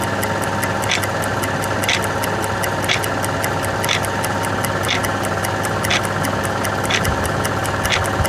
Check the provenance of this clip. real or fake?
real